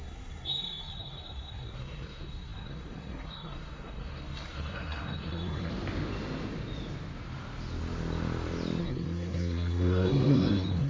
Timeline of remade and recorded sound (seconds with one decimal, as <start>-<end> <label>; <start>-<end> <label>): 0.0-5.7 remade; 5.7-8.8 recorded; 8.8-10.9 remade